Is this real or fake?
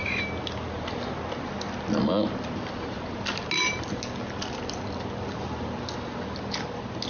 real